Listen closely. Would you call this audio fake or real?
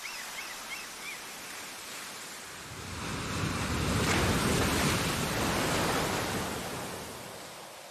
real